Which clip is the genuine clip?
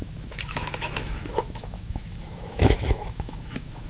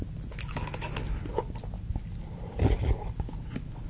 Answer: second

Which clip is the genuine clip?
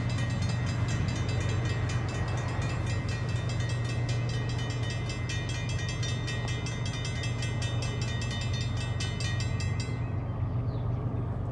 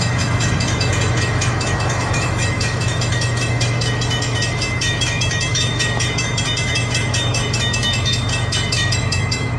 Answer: first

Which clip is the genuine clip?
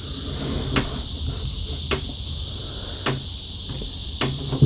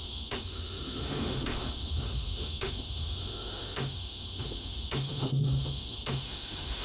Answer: first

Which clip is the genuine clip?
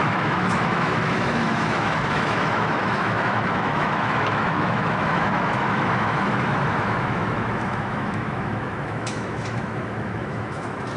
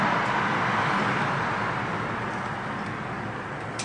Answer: second